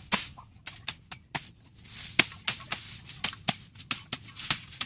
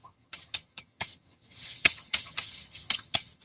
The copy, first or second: second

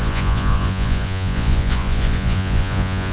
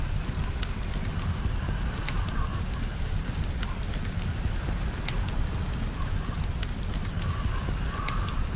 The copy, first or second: first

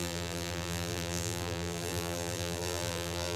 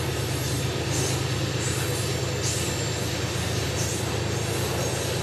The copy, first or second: first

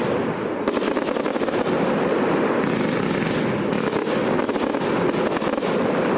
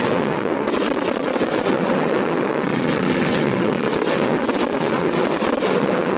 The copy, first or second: second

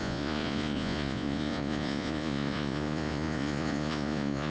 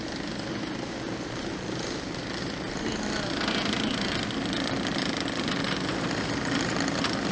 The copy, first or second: first